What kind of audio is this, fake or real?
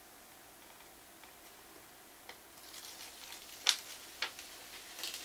real